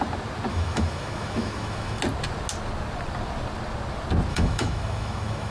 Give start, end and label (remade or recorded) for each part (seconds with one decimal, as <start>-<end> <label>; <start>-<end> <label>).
0.0-0.5 recorded; 0.5-2.0 remade; 2.0-4.3 recorded; 4.3-5.5 remade